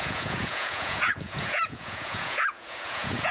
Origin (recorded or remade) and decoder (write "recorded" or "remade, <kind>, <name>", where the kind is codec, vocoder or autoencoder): remade, vocoder, Vocos